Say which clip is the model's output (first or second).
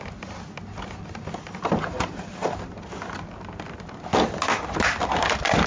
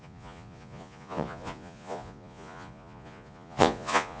second